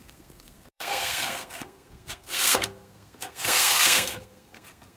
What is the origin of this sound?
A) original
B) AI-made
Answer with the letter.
B